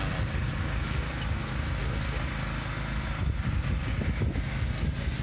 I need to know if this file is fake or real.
real